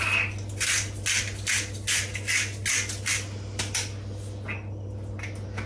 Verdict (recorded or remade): recorded